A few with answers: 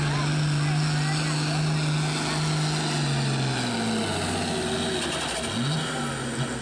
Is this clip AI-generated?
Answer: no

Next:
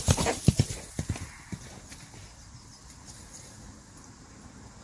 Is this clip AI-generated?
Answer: no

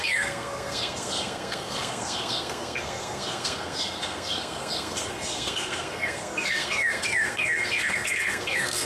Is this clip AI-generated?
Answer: yes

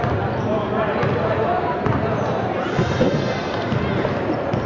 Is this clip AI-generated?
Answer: no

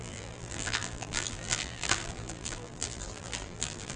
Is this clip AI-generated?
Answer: yes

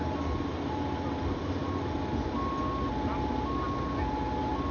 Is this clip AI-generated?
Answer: no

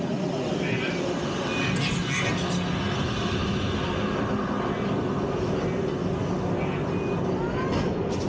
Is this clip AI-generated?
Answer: no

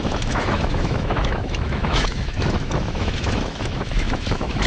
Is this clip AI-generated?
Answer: yes